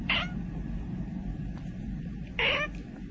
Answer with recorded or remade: recorded